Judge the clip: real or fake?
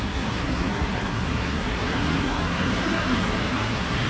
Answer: fake